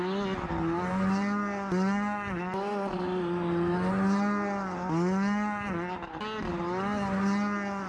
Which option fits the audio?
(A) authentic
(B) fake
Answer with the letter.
A